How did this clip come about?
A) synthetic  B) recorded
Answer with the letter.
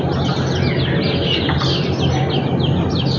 B